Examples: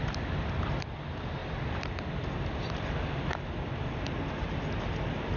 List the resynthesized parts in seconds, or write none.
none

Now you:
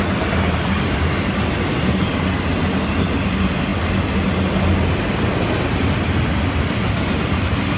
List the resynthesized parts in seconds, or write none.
none

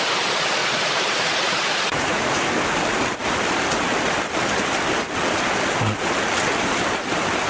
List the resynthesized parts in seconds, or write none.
0.6-2.5 (vocoder, Vocos)

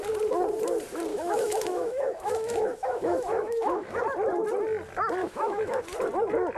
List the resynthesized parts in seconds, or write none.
1.1-4.0 (autoencoder, DAC-VAE); 5.2-5.8

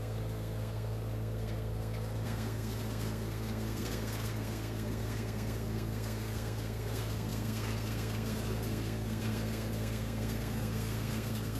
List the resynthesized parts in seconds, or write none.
0.0-11.6 (codec, SNAC)

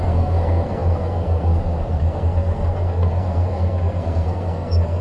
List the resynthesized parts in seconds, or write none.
0.0-5.0 (codec, SNAC)

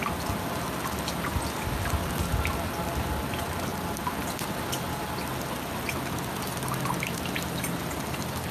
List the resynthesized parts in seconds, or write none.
none

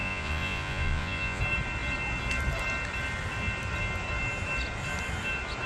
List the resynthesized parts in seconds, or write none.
0.0-1.4 (vocoder, Vocos)